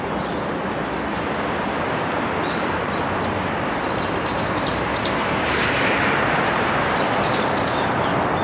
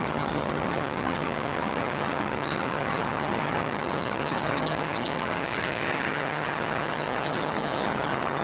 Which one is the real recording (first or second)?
first